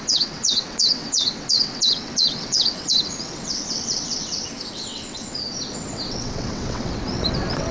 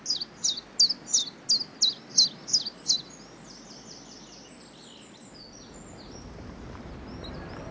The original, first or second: second